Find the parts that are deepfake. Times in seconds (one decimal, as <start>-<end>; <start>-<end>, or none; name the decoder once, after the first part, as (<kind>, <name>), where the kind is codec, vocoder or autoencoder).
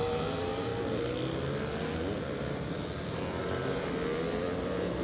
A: 0.0-0.7 (vocoder, BigVGAN v2); 3.4-5.0